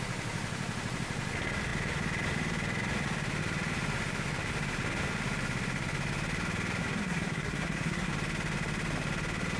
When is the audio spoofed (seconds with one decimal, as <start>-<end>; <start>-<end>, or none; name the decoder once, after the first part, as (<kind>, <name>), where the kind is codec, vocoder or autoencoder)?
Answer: 6.8-8.1 (codec, SNAC)